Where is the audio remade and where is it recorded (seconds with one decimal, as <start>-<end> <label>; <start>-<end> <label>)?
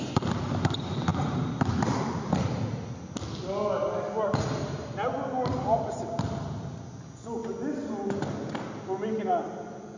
0.0-10.0 recorded